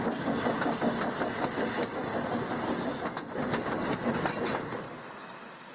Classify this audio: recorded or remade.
recorded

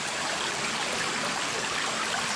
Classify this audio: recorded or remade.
recorded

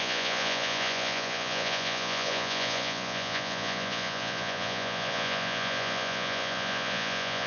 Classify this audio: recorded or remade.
remade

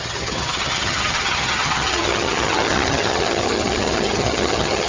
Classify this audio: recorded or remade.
remade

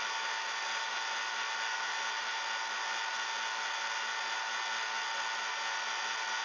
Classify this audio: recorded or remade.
recorded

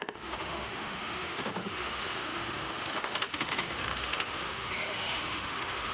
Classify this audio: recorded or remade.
remade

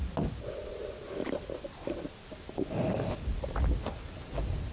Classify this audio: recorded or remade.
recorded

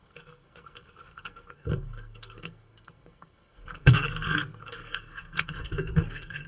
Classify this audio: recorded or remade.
remade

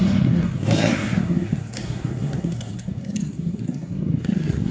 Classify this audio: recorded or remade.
remade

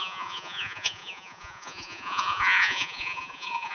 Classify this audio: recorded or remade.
remade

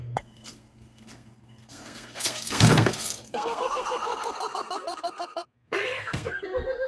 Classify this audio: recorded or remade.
remade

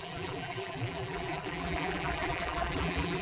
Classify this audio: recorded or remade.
remade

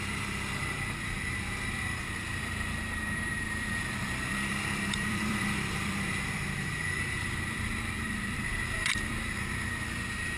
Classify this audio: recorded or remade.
remade